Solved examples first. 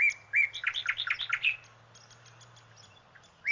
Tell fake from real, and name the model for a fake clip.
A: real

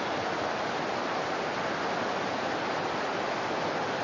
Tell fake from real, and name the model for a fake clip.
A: real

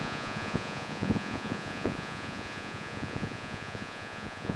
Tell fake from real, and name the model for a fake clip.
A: fake, vocoder, Vocos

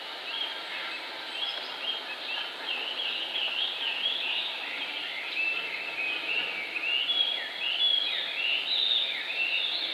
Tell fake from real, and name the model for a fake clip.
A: real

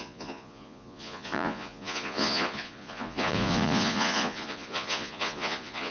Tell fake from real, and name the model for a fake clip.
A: fake, vocoder, Vocos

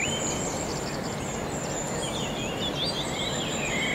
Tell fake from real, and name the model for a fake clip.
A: real